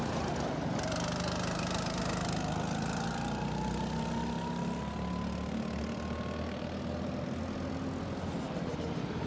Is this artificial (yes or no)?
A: no